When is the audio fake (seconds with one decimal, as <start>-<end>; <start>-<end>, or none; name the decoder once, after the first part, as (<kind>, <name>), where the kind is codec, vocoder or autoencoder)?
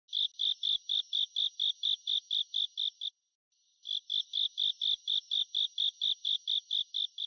none